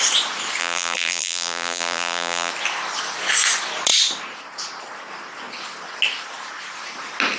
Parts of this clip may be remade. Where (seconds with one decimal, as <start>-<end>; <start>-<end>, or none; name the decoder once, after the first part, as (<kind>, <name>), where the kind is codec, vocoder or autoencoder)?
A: 0.6-2.5 (vocoder, BigVGAN v2)